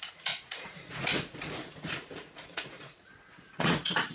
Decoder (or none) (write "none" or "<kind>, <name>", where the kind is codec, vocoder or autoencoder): vocoder, Vocos